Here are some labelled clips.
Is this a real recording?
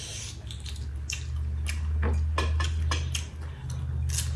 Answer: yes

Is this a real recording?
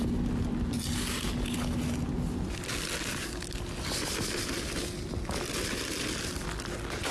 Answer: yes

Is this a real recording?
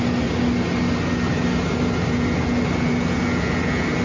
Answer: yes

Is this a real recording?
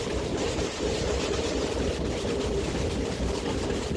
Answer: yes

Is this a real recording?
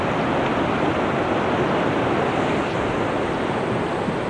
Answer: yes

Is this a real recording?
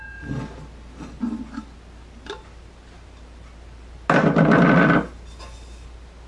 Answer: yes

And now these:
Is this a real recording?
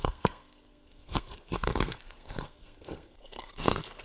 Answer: no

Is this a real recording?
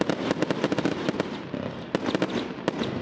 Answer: yes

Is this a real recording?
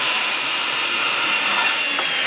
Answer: yes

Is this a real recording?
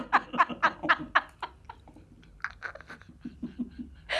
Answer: yes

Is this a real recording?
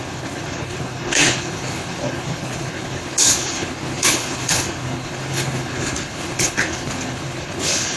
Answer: no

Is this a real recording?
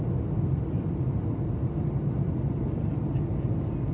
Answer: yes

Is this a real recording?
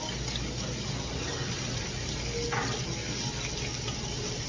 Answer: yes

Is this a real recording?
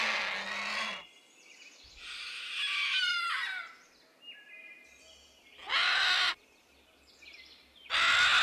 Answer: yes